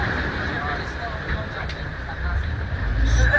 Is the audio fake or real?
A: fake